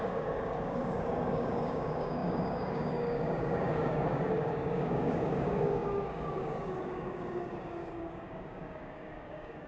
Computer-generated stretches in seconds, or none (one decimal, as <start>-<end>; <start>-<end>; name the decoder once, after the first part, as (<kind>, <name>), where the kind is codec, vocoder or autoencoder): 0.0-9.7 (codec, DAC)